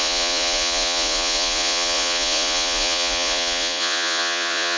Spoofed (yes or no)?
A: yes